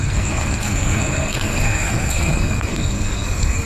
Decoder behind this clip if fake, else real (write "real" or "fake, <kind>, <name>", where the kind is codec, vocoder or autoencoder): fake, codec, SNAC